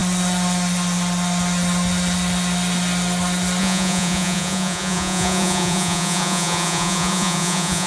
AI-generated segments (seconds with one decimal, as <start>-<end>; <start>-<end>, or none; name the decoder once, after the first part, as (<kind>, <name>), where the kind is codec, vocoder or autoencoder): 3.6-7.9 (vocoder, Vocos)